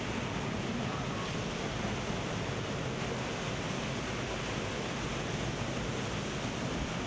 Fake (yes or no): no